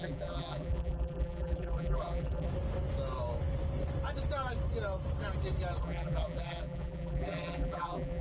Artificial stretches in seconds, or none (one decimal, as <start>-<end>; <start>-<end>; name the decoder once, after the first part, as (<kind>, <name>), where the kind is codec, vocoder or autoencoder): 0.0-2.5 (vocoder, BigVGAN v2); 5.8-8.2